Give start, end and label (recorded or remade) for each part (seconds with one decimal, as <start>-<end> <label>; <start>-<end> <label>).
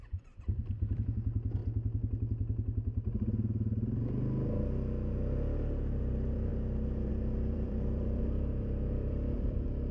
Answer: 0.0-1.6 remade; 1.6-6.0 recorded; 6.0-6.5 remade; 6.5-7.1 recorded; 7.1-9.9 remade